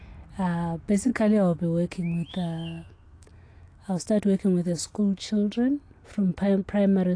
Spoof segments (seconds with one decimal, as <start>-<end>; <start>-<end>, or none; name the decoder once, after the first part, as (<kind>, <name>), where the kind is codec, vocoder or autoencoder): 1.1-4.2 (autoencoder, DAC-VAE)